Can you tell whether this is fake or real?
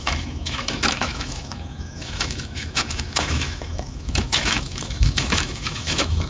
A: fake